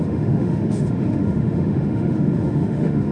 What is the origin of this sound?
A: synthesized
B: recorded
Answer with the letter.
A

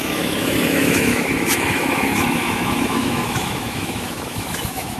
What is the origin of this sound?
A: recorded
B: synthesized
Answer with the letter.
B